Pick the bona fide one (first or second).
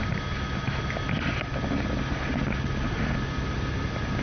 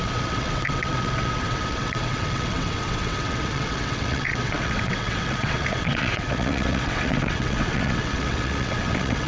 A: first